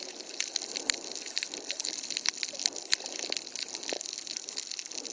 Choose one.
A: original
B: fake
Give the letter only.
A